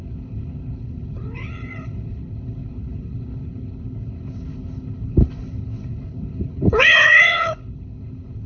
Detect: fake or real fake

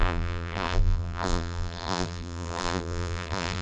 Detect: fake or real fake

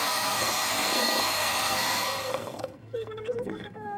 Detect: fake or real fake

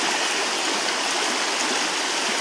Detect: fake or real real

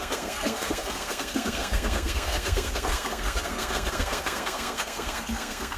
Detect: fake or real fake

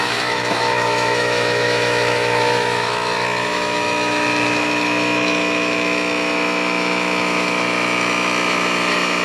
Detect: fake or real fake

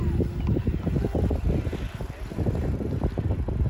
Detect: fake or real real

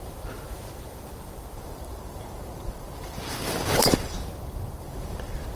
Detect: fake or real fake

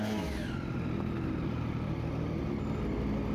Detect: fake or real real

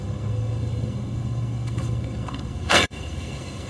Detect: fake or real fake